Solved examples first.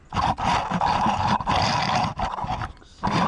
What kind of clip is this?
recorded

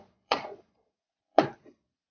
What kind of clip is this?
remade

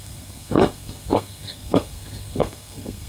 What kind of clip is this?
remade